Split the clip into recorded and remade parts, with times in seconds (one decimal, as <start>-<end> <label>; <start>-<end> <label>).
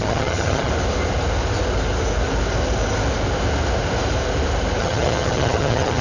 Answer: 0.0-0.7 remade; 0.7-4.8 recorded; 4.8-6.0 remade